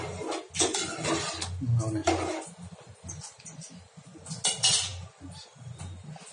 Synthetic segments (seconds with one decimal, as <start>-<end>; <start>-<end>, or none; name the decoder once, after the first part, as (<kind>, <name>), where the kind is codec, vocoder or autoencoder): none